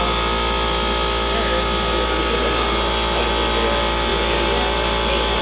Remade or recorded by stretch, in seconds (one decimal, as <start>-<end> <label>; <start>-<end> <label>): 0.0-5.4 recorded